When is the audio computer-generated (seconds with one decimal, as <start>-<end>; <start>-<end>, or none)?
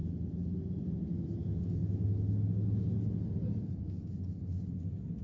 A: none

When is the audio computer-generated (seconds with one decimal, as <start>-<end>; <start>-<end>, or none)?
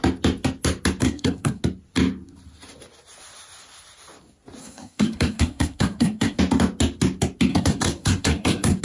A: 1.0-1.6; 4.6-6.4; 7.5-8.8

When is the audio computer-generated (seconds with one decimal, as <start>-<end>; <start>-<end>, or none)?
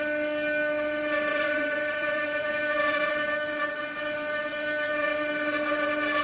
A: 1.3-3.1; 4.5-5.3